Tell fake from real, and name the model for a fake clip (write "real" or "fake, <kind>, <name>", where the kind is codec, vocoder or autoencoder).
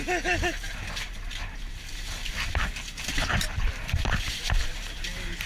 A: real